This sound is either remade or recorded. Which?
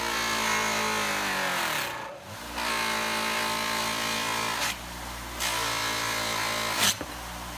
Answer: recorded